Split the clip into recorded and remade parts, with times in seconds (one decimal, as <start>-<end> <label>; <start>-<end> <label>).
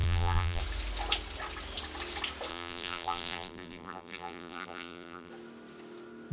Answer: 0.0-0.6 remade; 0.6-2.5 recorded; 2.5-5.3 remade; 5.3-6.3 recorded